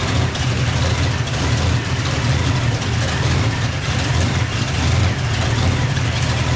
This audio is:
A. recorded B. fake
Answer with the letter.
A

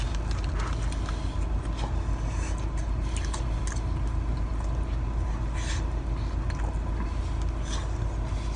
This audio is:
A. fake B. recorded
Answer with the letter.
B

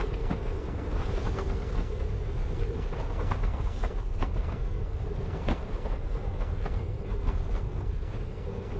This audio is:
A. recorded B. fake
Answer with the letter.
B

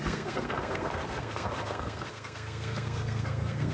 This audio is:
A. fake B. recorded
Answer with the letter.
A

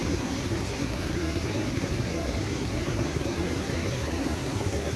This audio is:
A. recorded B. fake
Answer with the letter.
B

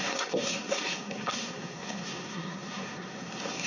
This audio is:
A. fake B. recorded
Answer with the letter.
A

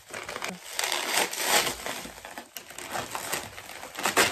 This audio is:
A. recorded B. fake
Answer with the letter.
A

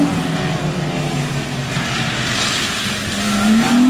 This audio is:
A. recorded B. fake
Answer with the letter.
A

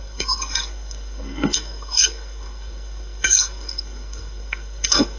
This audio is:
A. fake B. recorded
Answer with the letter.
A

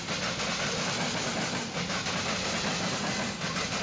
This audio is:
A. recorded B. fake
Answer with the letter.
A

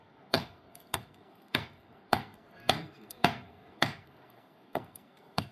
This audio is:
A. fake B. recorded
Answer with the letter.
A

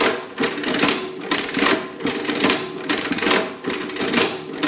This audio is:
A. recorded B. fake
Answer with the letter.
A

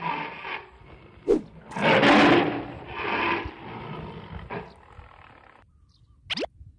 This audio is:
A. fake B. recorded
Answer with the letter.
B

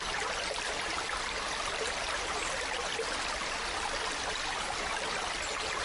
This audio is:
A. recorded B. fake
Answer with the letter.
A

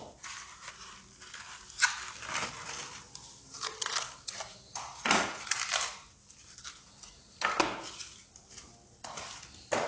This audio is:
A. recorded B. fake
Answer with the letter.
A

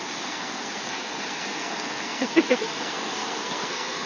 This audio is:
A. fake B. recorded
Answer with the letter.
A